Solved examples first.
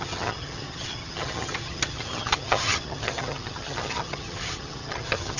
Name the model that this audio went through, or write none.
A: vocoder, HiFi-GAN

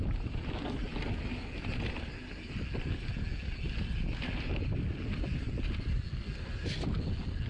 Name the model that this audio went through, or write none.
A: none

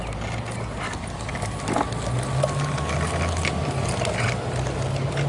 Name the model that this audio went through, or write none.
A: none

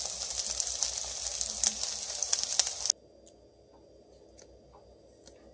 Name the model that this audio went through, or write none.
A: none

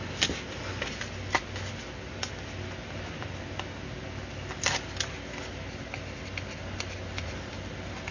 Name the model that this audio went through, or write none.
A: none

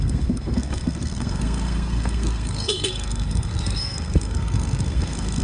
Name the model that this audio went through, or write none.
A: codec, SNAC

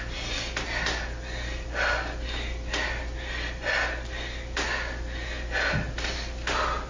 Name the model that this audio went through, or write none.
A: none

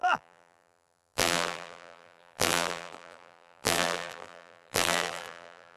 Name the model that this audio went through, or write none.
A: vocoder, BigVGAN v2